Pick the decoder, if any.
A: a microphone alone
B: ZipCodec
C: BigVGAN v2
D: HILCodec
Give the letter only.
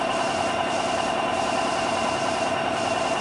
A